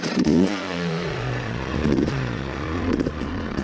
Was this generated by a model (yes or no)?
yes